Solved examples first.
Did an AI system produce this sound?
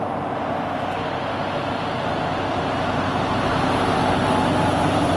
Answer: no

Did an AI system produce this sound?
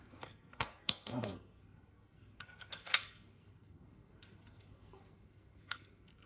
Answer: yes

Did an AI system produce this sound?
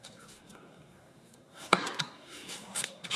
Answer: yes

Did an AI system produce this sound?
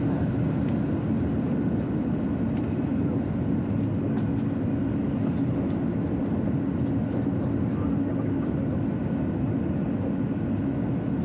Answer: no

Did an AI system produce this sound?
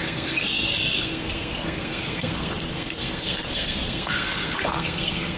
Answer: yes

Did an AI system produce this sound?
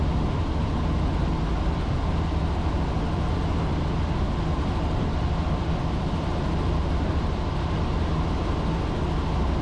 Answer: no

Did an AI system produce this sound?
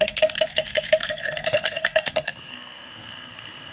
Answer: yes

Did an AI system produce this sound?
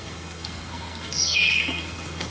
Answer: yes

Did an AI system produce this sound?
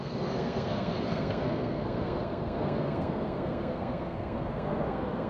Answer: yes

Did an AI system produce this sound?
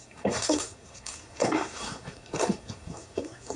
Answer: yes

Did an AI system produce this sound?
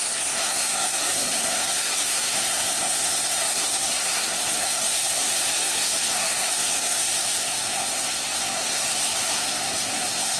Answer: yes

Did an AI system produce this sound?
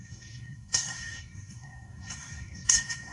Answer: yes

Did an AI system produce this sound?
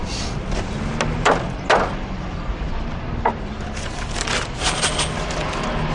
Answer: no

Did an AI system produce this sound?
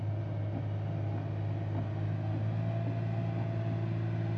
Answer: no